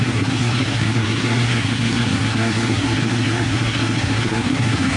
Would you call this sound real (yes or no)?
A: no